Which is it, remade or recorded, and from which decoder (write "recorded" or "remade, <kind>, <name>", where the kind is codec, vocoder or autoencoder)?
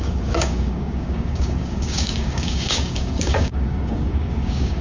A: remade, codec, DAC